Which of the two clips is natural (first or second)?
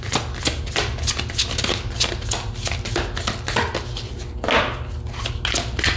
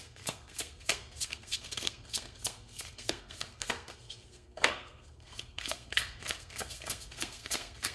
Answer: first